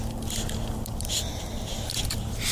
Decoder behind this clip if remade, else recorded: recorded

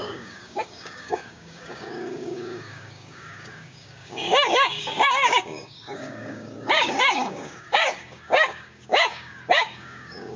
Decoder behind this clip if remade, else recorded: remade, codec, DAC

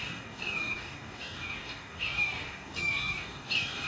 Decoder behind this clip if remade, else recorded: remade, codec, DAC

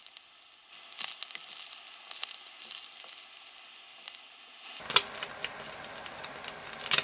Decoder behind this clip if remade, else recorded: recorded